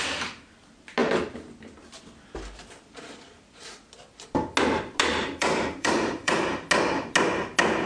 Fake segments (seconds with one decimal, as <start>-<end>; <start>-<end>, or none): 5.1-6.4